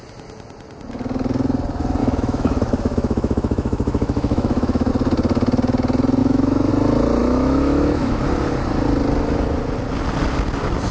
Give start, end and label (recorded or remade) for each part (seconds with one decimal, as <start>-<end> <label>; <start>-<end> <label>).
0.0-2.0 recorded; 2.0-4.9 remade; 4.9-6.2 recorded; 6.2-6.7 remade; 6.7-7.2 recorded; 7.2-8.2 remade; 8.2-10.9 recorded